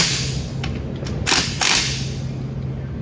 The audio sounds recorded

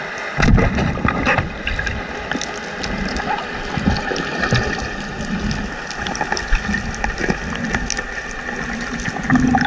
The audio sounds recorded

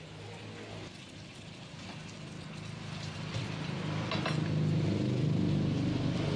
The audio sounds recorded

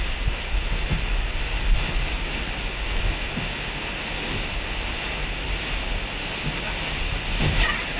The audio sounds recorded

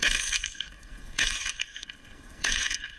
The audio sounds remade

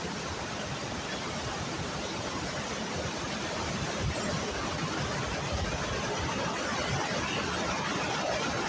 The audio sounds recorded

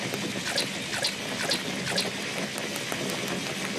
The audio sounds recorded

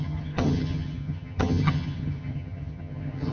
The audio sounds remade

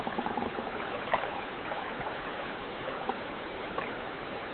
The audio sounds remade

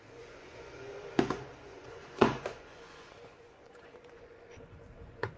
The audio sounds remade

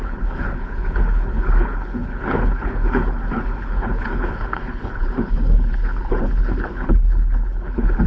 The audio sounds remade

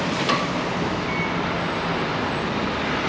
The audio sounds recorded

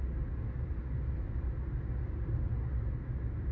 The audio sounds recorded